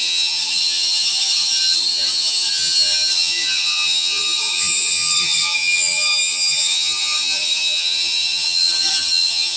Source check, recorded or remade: remade